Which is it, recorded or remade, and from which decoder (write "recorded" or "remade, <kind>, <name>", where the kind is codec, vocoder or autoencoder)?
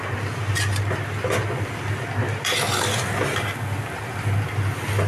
recorded